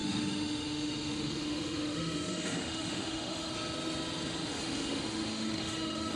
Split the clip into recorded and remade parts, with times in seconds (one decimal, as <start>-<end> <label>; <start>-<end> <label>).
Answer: 0.0-3.5 remade; 3.5-4.5 recorded; 4.5-6.1 remade